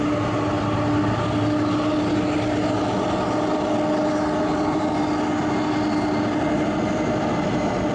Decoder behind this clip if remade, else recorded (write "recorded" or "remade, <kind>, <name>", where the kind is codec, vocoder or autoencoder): recorded